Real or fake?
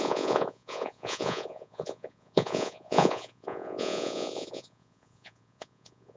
fake